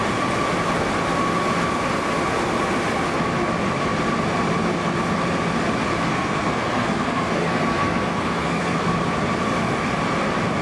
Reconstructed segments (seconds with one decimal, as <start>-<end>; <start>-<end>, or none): 6.1-9.0